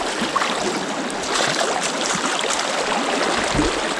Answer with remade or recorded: recorded